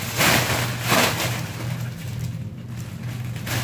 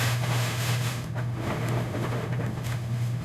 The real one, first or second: first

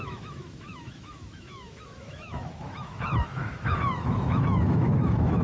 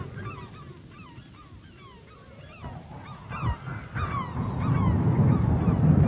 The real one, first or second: second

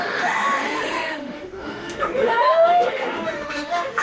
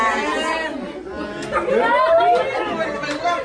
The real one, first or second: second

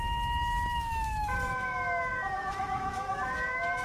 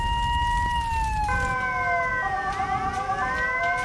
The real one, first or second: second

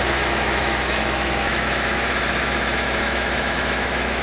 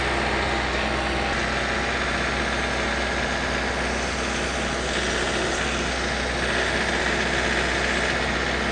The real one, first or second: second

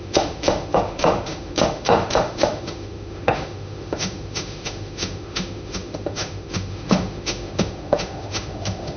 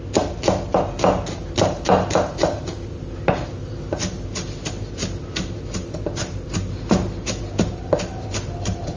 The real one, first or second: second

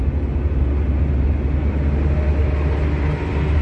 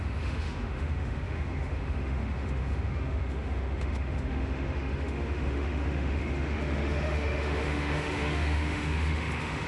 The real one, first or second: first